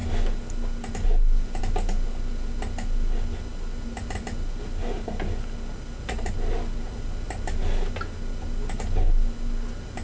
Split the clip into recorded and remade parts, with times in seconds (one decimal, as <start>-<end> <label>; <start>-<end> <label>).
0.0-10.0 recorded